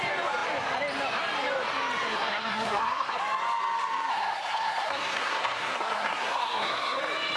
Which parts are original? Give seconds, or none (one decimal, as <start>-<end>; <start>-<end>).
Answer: 0.0-2.1; 3.2-4.1; 7.0-7.4

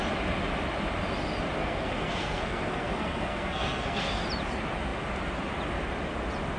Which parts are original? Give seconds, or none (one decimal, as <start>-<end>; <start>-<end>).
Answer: 0.0-1.6; 4.2-6.6